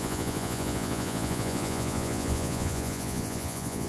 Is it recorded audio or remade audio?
remade